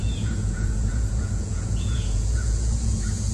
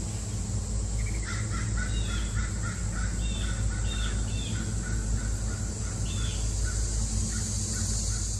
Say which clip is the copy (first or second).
first